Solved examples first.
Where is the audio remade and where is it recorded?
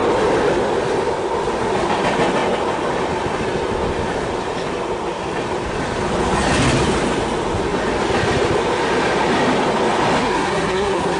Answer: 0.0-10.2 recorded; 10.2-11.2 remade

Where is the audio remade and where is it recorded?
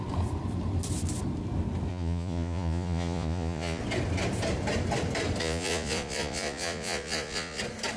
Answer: 0.0-1.9 recorded; 1.9-3.8 remade; 3.8-5.4 recorded; 5.4-7.6 remade; 7.6-8.0 recorded